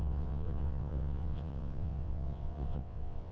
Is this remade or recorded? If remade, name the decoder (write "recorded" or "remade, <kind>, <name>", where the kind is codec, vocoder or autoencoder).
remade, vocoder, WaveNeXt